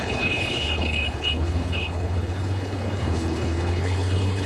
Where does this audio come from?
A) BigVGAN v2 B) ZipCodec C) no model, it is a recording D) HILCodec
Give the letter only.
D